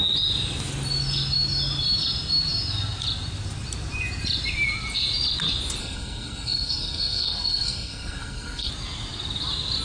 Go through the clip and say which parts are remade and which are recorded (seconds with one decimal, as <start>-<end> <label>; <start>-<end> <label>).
0.0-5.8 recorded; 5.8-8.7 remade; 8.7-9.8 recorded